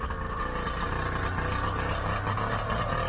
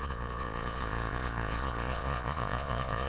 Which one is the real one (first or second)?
first